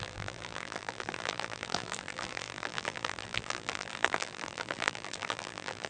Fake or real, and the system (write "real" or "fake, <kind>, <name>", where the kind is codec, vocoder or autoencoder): fake, vocoder, BigVGAN v2